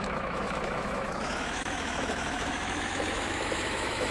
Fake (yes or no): yes